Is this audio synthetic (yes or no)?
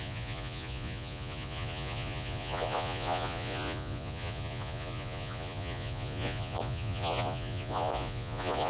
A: yes